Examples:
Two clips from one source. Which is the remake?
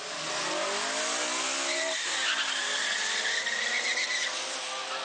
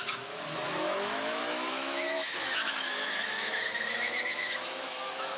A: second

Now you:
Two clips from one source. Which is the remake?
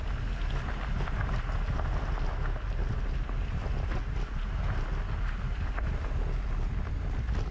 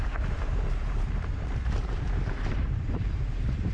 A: second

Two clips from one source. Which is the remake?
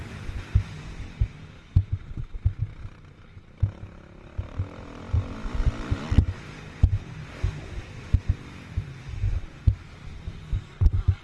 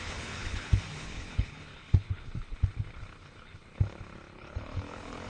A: second